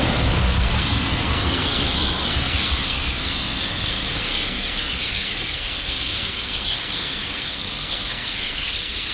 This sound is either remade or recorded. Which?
remade